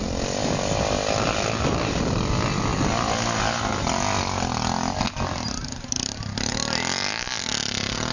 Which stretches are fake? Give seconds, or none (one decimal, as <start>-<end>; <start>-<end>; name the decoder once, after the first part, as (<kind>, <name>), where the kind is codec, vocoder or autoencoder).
0.4-1.7 (vocoder, BigVGAN v2)